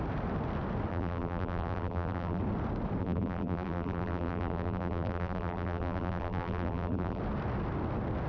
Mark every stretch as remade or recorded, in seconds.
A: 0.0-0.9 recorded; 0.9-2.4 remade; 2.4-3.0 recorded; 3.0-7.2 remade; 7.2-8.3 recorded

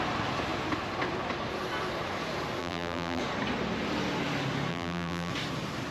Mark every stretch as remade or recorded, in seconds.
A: 0.0-2.6 recorded; 2.6-3.2 remade; 3.2-4.7 recorded; 4.7-5.3 remade; 5.3-5.9 recorded

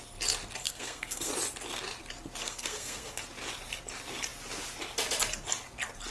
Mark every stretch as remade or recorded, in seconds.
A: 0.0-0.6 recorded; 0.6-1.3 remade; 1.3-2.4 recorded; 2.4-3.2 remade; 3.2-6.1 recorded

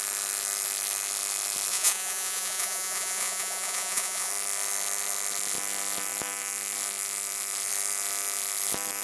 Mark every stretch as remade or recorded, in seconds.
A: 0.0-1.7 recorded; 1.7-4.3 remade; 4.3-9.0 recorded